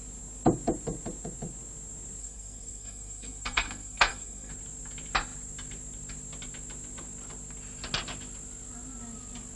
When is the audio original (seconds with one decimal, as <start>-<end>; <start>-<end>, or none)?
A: 0.0-2.2; 4.5-9.6